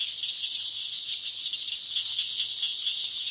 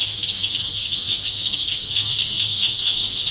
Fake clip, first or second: second